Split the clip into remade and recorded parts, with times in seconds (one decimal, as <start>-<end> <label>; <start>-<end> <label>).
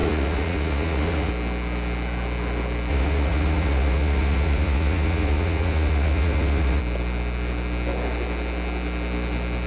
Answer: 0.0-1.3 remade; 1.3-2.9 recorded; 2.9-6.8 remade; 6.8-9.7 recorded